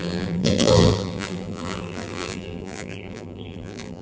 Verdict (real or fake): fake